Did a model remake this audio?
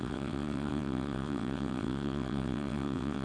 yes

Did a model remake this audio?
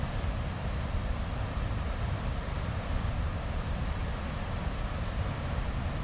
yes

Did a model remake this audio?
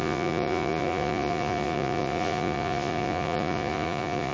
yes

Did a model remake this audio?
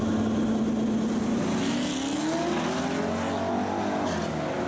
no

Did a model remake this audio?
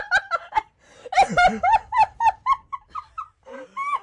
no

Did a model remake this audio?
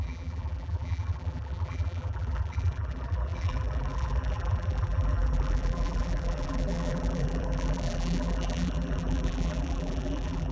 yes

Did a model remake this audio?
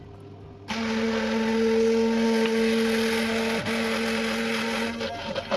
no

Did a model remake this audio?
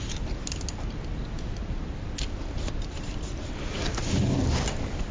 no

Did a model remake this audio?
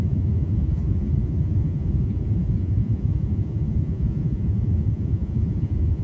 yes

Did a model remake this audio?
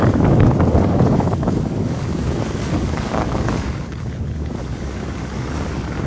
yes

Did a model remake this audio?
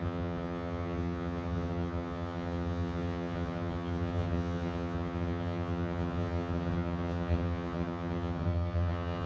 yes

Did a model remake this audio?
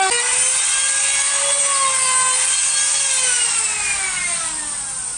no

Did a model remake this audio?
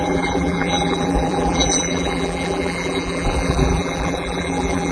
yes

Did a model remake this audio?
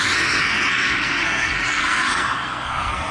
yes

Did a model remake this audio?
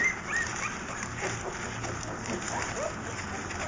no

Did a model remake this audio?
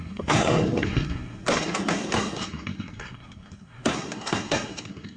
yes